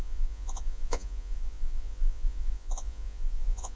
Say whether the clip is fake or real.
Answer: fake